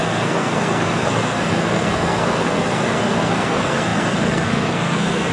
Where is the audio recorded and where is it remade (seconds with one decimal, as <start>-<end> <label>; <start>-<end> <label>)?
0.0-5.3 remade